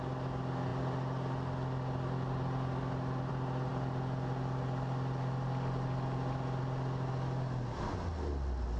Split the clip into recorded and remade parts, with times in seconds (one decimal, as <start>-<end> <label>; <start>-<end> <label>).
0.0-8.8 recorded